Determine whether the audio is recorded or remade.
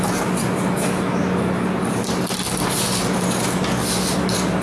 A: recorded